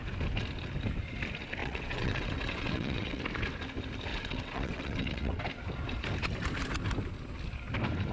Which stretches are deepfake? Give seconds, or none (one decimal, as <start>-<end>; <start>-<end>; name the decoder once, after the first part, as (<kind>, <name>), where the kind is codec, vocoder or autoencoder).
1.6-3.2 (vocoder, WaveNeXt); 4.1-5.4